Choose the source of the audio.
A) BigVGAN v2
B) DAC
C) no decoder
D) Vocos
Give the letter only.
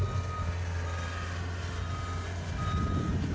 C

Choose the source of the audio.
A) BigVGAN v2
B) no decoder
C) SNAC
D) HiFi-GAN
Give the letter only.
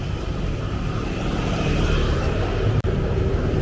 A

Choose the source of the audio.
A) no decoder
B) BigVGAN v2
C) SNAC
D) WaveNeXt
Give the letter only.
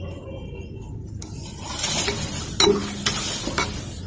A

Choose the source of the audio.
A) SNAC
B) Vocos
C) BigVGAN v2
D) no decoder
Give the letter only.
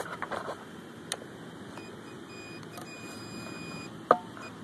D